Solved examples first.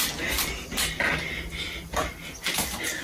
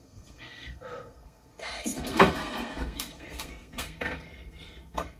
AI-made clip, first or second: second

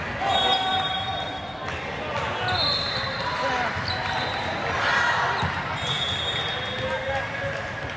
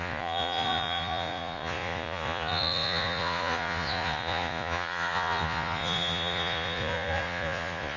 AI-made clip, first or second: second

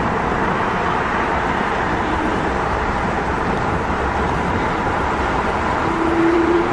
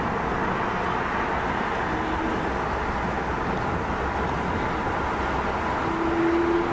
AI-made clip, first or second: first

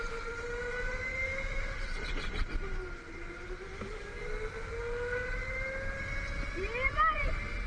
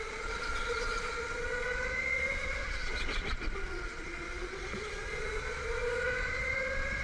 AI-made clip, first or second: second